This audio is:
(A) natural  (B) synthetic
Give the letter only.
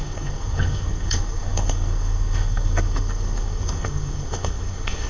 B